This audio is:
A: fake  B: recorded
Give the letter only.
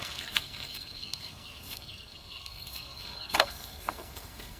A